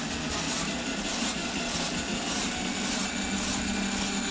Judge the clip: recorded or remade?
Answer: recorded